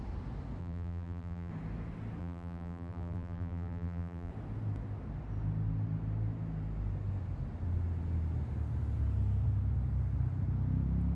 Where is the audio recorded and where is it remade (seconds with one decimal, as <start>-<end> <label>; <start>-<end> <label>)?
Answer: 0.0-0.6 recorded; 0.6-1.5 remade; 1.5-2.2 recorded; 2.2-4.3 remade; 4.3-11.2 recorded